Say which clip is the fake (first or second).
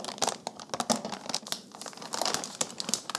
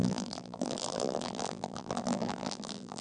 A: second